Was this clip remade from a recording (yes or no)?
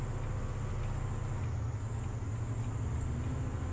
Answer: no